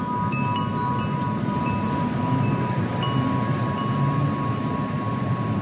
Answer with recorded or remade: recorded